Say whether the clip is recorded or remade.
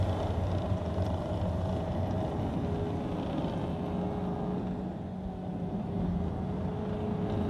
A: recorded